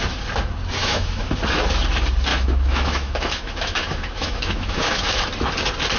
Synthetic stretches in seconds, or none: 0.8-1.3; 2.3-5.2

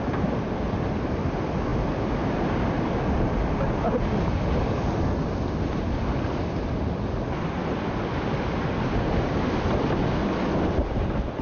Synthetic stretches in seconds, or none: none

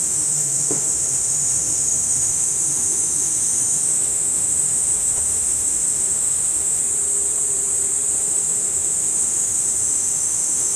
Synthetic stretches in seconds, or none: 0.0-6.8; 8.2-10.8

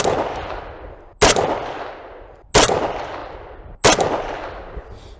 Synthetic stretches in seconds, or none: none

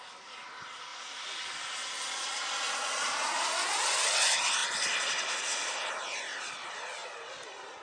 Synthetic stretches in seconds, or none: none

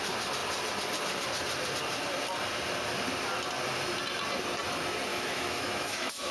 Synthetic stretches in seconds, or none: 5.1-6.3